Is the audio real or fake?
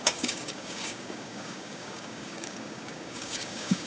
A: fake